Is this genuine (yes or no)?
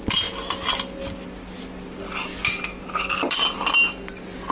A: yes